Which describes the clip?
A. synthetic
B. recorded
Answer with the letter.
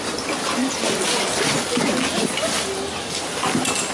B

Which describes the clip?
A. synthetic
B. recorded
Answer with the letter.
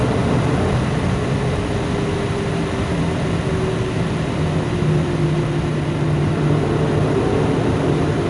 B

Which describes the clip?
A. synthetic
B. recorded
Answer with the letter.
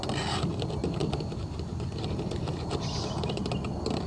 B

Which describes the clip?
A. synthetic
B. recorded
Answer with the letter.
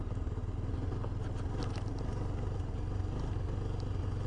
B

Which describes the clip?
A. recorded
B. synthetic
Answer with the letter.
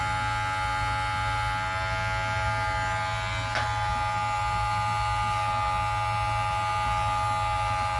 A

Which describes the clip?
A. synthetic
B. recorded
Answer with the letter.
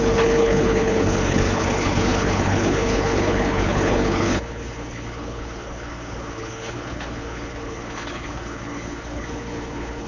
A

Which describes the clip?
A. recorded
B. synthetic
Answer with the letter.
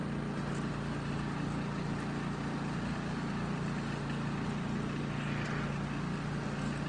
A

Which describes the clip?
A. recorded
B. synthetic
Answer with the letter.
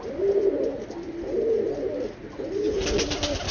A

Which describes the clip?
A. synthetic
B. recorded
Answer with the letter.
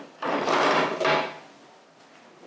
B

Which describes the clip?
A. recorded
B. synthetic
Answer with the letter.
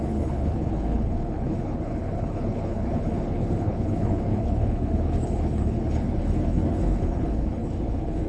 B